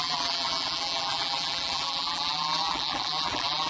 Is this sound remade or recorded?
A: remade